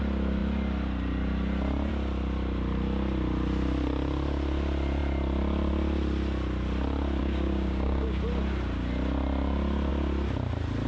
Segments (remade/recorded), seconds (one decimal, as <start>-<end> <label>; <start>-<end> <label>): 0.0-7.2 recorded; 7.2-8.2 remade; 8.2-10.9 recorded